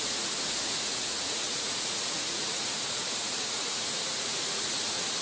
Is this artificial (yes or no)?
yes